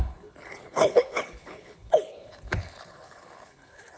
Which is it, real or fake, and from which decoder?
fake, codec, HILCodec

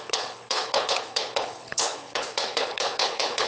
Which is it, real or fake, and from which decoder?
fake, codec, HILCodec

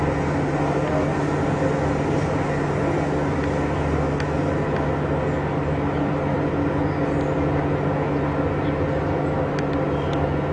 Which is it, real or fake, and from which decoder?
real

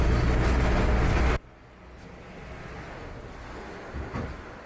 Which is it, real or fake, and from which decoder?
real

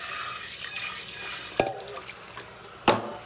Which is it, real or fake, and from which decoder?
real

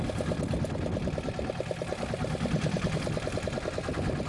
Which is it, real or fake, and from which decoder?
real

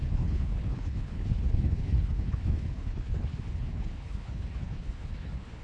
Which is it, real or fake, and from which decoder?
fake, codec, HILCodec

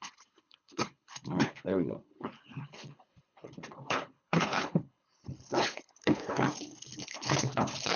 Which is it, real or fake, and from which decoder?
fake, codec, HILCodec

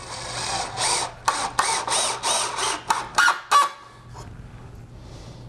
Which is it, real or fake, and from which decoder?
real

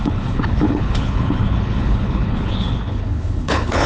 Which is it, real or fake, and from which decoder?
fake, codec, HILCodec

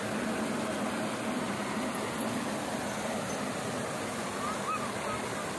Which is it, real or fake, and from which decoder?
real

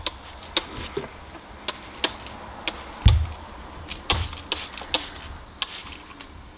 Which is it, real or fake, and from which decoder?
real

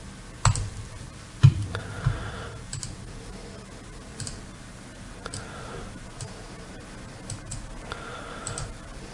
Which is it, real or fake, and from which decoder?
real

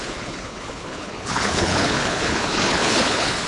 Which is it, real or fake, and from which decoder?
fake, codec, HILCodec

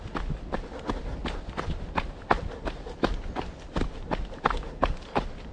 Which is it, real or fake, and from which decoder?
real